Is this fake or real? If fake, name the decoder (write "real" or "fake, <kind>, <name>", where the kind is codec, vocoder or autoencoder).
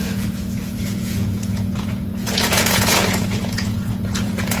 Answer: fake, vocoder, Vocos